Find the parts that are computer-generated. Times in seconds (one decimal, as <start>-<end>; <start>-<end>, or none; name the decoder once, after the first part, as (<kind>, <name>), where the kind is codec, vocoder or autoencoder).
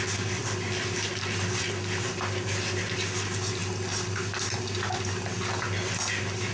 none